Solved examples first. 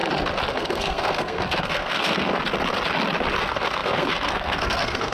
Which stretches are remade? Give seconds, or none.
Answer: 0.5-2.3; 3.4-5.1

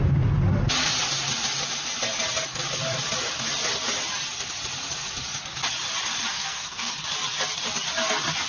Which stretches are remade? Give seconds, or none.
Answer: 6.3-6.9